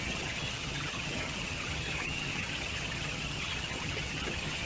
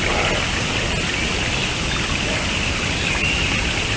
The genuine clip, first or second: second